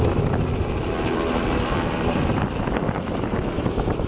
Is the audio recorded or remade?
recorded